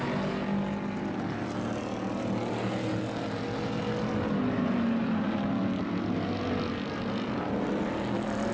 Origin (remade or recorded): recorded